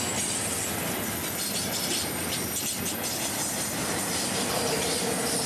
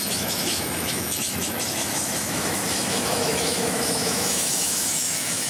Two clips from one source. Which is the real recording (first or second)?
first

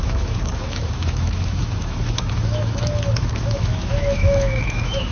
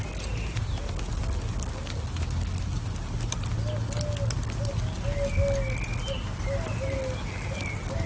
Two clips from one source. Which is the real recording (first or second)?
second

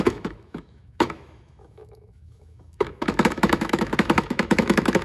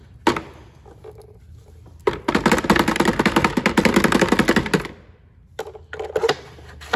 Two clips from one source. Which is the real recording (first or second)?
second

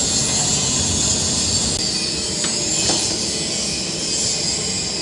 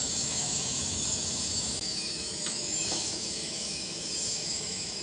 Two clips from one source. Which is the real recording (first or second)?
first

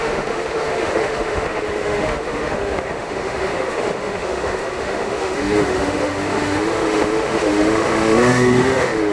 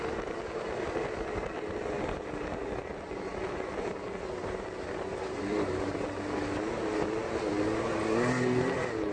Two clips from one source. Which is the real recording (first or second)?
second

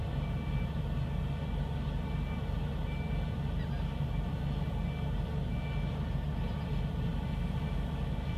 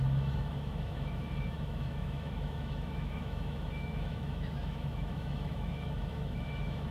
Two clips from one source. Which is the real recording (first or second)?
first